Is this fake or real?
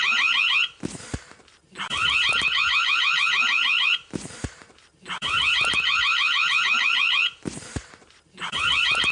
fake